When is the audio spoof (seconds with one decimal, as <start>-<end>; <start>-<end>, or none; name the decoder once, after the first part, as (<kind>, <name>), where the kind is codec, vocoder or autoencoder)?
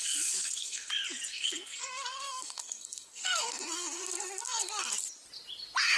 0.0-0.9 (codec, SNAC); 1.3-4.9